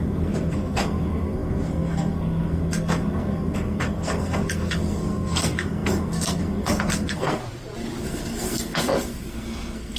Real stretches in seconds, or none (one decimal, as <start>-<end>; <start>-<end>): 7.4-8.0